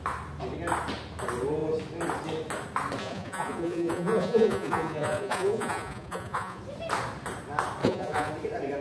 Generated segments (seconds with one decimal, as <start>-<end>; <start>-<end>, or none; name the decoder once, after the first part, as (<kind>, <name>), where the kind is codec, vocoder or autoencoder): 3.0-6.6 (vocoder, Vocos); 7.8-8.3